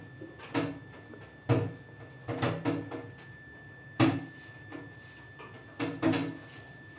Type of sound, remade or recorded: recorded